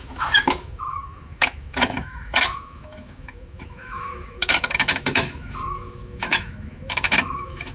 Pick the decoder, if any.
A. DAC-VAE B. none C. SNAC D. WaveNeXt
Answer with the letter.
A